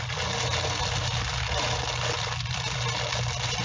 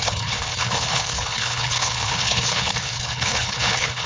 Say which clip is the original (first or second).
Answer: first